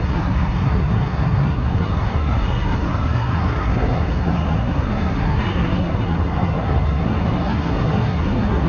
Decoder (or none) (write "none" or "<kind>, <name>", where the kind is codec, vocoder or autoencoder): codec, SNAC